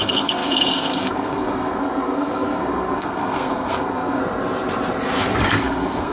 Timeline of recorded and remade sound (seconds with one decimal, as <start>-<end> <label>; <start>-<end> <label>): 0.0-4.2 remade; 4.2-5.4 recorded; 5.4-6.1 remade